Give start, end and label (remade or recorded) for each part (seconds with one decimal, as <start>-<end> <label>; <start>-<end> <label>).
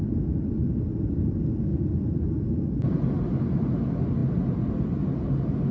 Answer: 0.0-5.7 recorded